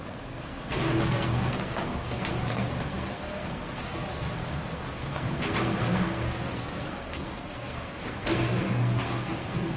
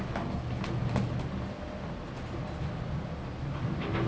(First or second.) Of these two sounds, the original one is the second